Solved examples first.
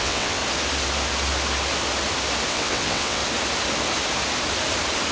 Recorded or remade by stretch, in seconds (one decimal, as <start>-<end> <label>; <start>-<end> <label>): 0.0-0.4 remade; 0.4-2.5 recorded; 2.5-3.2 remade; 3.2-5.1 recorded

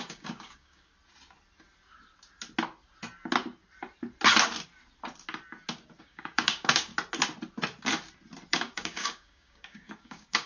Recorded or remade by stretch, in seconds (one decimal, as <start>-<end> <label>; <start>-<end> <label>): 0.0-0.9 remade; 0.9-6.0 recorded; 6.0-6.9 remade; 6.9-8.5 recorded; 8.5-10.5 remade

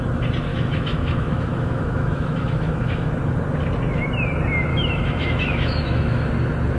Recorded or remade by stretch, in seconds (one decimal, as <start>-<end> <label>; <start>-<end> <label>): 0.0-0.5 recorded; 0.5-3.1 remade; 3.1-4.7 recorded; 4.7-6.3 remade; 6.3-6.8 recorded